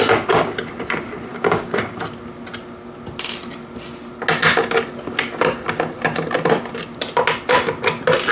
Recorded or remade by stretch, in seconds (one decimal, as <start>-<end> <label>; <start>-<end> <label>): 0.0-1.3 recorded; 1.3-2.0 remade; 2.0-8.3 recorded